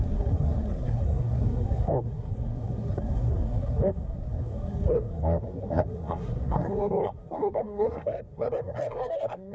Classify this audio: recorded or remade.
remade